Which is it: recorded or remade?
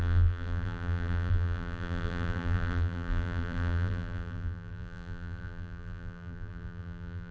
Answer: remade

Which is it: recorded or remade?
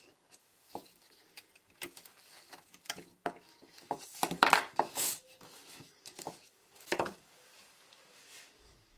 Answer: remade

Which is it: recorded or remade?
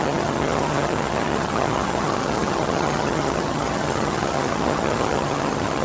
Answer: remade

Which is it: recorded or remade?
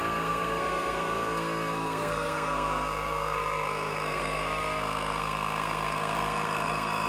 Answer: remade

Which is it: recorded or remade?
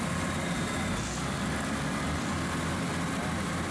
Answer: recorded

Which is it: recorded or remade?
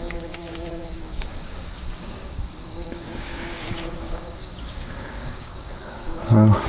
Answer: remade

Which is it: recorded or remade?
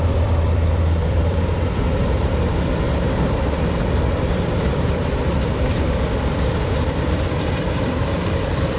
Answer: remade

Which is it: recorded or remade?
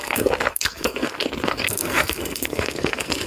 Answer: remade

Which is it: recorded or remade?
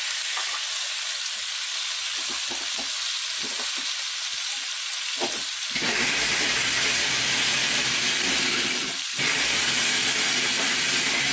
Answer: remade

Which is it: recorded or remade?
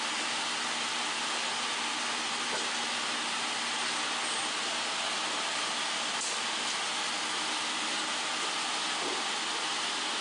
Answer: recorded